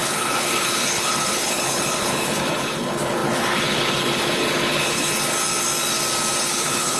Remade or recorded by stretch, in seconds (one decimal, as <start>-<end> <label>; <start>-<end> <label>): 0.0-5.1 remade; 5.1-6.4 recorded; 6.4-7.0 remade